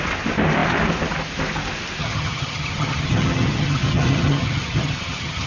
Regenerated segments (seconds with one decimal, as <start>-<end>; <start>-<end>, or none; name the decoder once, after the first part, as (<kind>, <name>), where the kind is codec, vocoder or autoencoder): 2.0-5.5 (vocoder, HiFi-GAN)